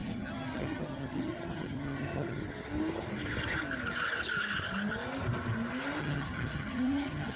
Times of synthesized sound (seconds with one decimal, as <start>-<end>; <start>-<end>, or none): 0.0-2.4; 6.0-7.4